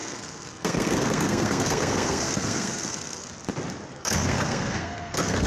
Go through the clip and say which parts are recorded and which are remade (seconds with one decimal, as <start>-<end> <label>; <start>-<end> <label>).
0.0-3.3 remade; 3.3-3.9 recorded; 3.9-5.5 remade